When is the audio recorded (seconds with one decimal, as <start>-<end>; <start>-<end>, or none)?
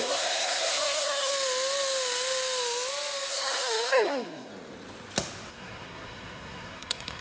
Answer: 1.3-3.3; 4.5-5.5